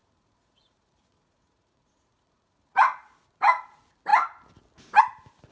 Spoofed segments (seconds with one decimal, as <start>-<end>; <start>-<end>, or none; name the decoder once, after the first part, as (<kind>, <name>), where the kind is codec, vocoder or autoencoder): 0.0-3.3 (vocoder, Vocos)